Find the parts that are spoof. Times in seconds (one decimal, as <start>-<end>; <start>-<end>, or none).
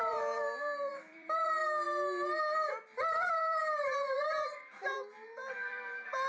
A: 0.0-1.6; 3.3-6.3